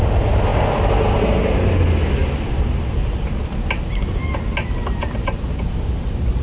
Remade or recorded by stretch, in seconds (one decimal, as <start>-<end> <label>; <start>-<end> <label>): 0.0-6.4 recorded